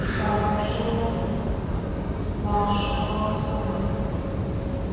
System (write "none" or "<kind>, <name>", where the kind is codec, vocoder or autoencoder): none